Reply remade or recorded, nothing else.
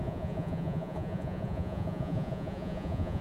remade